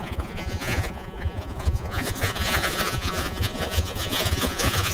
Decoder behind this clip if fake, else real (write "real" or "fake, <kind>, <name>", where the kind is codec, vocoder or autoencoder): fake, vocoder, Vocos